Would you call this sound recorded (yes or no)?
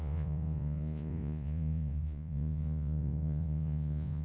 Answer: no